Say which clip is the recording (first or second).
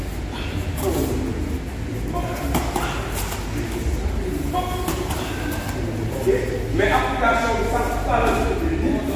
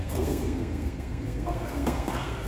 first